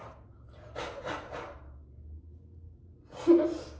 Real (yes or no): yes